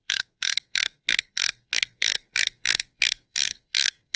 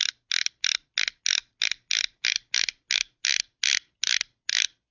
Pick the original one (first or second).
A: second